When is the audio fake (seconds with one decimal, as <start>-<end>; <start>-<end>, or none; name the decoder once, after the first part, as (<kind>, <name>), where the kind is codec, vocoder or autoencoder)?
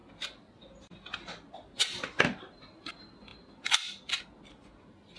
none